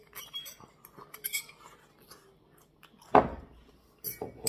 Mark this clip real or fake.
real